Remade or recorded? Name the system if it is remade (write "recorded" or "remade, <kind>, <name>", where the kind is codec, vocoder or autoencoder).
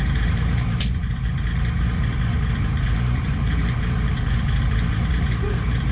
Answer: remade, vocoder, BigVGAN v2